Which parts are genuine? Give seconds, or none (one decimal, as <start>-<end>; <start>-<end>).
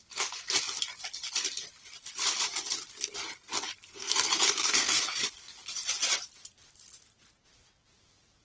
0.0-3.9; 5.0-8.4